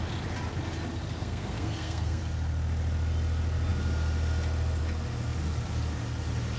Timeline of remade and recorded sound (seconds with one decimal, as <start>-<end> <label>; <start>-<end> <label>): 0.0-1.2 recorded; 1.2-2.2 remade; 2.2-6.6 recorded